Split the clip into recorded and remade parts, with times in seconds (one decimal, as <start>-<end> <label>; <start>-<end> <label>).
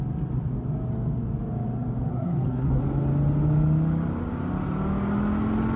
0.0-2.1 recorded; 2.1-2.8 remade; 2.8-5.8 recorded